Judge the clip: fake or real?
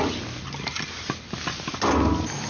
real